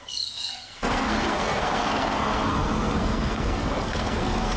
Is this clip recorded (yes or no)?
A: no